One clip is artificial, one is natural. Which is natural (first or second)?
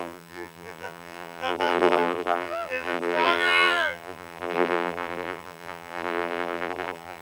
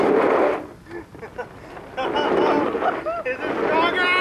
second